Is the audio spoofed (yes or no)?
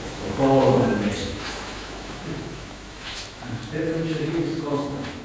yes